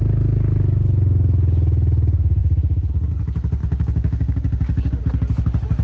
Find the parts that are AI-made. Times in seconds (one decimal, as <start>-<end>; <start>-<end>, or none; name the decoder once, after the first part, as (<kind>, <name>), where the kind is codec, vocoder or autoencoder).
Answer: 3.6-5.0 (codec, DAC)